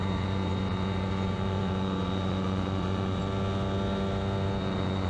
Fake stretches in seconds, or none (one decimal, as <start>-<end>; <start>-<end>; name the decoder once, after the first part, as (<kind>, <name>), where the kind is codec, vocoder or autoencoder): 0.0-3.2 (vocoder, Vocos); 4.6-5.1